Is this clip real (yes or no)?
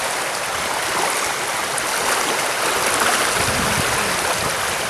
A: yes